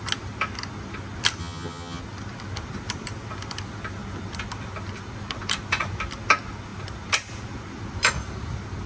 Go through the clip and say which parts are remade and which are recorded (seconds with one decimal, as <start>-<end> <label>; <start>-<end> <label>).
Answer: 0.0-1.4 recorded; 1.4-2.0 remade; 2.0-8.9 recorded